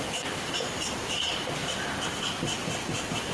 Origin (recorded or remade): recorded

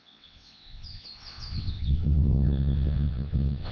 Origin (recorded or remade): remade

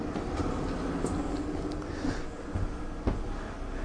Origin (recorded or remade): recorded